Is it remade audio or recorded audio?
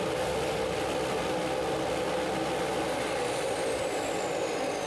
recorded